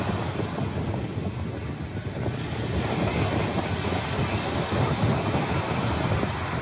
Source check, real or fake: real